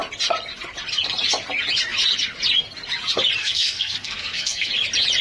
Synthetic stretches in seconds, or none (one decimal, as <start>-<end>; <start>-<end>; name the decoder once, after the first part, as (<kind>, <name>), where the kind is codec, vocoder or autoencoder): 3.4-4.7 (codec, SNAC)